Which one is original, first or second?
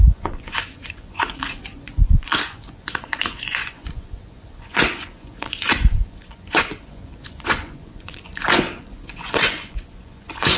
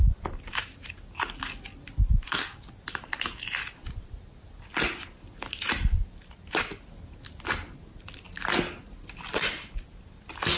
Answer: second